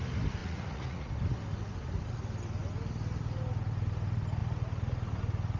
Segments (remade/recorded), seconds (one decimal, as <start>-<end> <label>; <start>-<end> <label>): 0.0-0.4 recorded; 0.4-1.1 remade; 1.1-5.6 recorded